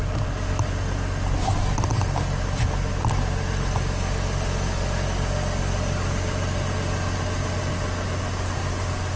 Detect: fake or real real